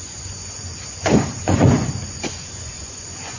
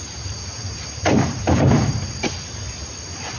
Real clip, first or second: second